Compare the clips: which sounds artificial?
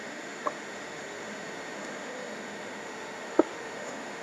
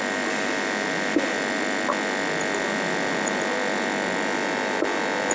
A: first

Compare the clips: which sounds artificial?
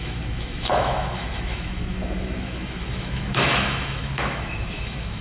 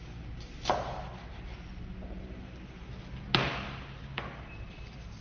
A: first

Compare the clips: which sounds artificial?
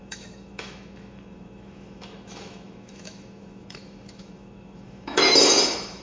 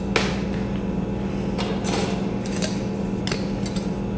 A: first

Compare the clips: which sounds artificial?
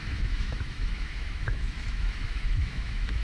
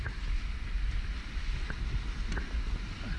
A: first